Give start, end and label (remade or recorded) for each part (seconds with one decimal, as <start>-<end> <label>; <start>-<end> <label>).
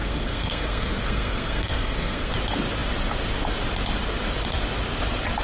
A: 0.0-2.3 remade; 2.3-5.4 recorded